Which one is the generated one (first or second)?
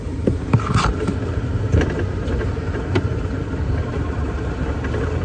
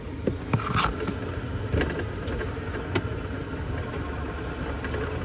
first